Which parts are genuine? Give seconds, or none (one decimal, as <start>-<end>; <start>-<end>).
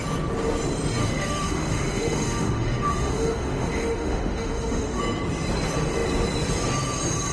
0.0-1.0; 5.0-7.3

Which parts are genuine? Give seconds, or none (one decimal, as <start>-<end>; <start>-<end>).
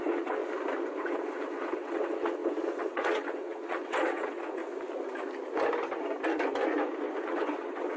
0.4-1.0; 4.6-7.2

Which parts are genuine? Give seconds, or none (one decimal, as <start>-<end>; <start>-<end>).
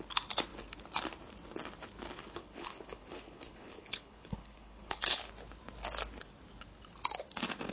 0.0-2.4; 5.3-7.7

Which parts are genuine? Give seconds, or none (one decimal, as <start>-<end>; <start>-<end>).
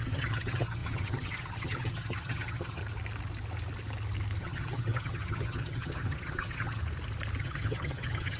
2.8-4.4; 6.8-7.4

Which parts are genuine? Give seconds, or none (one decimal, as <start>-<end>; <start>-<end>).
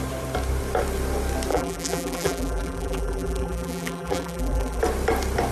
0.0-1.5; 4.8-5.5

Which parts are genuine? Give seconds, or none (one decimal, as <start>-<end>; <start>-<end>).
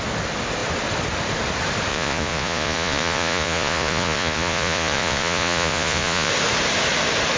0.0-1.9; 6.3-7.4